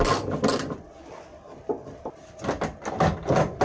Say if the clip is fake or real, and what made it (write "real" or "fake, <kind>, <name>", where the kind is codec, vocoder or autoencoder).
real